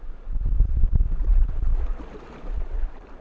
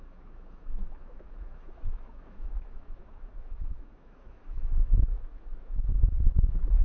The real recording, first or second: first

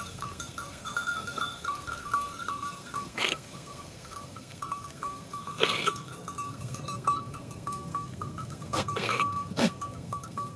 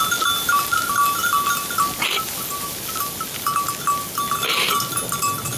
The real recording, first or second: second